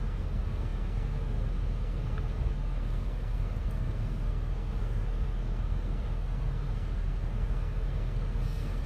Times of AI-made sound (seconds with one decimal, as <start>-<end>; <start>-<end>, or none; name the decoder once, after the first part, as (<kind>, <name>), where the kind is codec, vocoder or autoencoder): 0.0-8.9 (codec, SNAC)